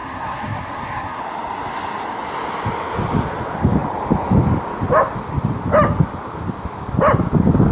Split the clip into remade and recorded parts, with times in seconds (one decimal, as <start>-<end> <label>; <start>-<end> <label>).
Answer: 0.0-1.2 remade; 1.2-7.7 recorded